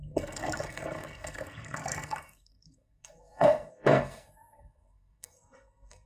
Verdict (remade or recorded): remade